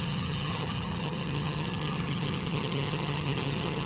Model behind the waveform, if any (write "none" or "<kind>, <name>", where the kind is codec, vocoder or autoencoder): vocoder, HiFi-GAN